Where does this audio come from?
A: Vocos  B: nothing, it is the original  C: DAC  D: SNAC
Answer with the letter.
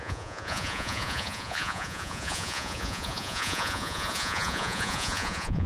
A